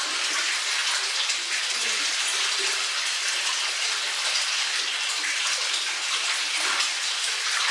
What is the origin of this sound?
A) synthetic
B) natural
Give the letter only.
A